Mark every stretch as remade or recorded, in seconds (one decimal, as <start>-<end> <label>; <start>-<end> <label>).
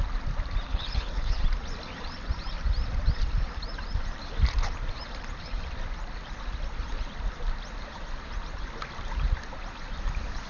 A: 0.0-0.7 recorded; 0.7-1.4 remade; 1.4-10.5 recorded